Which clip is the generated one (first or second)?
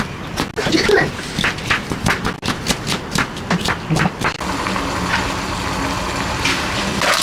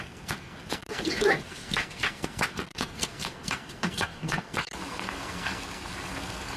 second